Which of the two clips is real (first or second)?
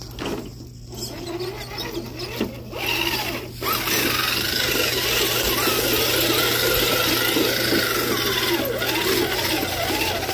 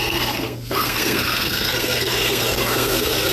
first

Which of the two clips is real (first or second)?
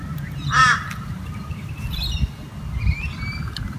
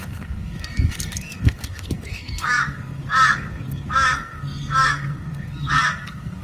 first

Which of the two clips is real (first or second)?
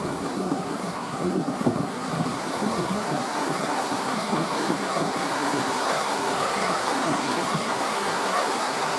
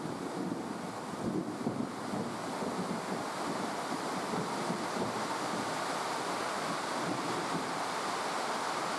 second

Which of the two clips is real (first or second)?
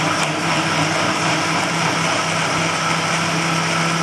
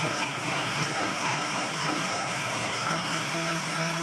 first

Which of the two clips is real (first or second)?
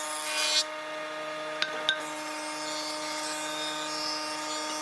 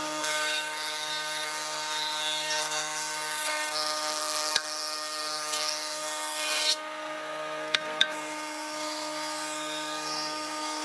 first